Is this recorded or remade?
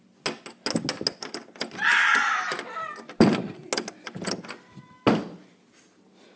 recorded